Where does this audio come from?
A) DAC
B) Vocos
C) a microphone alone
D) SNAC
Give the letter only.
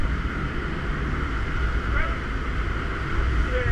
C